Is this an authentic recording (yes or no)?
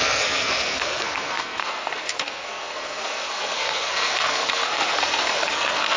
no